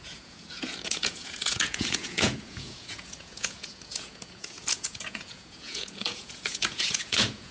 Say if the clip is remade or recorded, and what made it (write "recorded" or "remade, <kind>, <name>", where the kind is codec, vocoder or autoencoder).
remade, vocoder, Vocos